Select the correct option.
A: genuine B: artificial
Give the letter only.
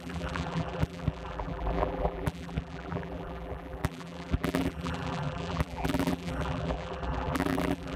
B